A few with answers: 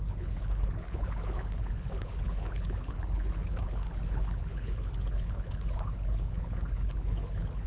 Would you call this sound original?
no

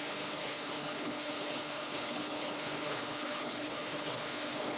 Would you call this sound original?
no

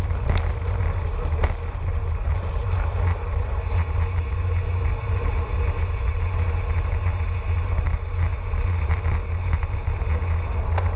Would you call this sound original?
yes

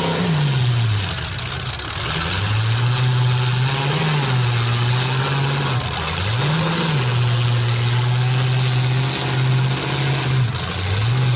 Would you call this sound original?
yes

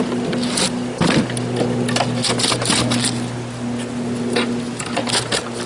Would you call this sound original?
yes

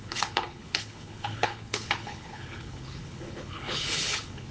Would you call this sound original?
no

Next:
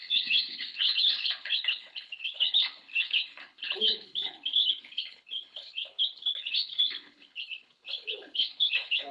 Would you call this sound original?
no